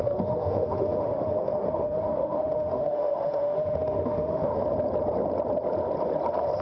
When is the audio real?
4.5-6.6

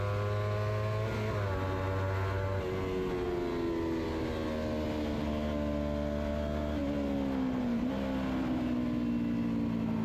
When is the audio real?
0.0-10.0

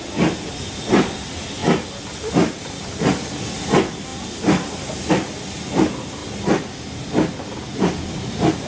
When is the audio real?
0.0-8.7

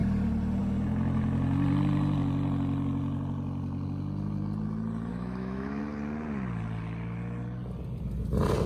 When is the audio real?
0.0-5.1; 5.8-8.7

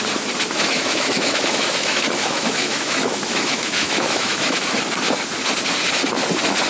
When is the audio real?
0.0-0.6; 4.6-6.7

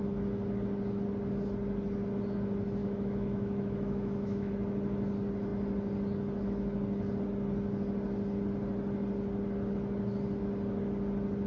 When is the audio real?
0.0-2.8; 4.5-11.5